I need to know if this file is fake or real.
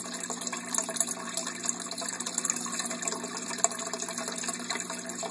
real